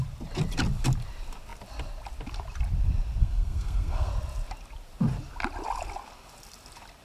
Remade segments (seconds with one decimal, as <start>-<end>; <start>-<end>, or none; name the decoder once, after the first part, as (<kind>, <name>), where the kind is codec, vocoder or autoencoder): 3.2-4.1 (codec, SNAC)